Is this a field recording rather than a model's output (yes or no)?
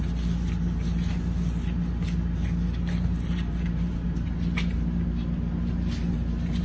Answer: yes